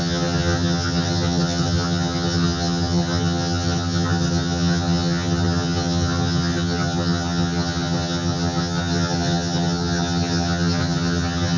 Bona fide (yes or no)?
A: no